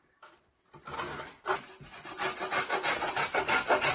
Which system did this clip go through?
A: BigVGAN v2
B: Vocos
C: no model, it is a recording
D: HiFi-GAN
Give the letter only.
C